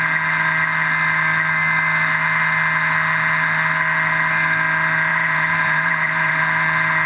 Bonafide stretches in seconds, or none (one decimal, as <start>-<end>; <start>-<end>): 0.0-5.1; 6.4-7.1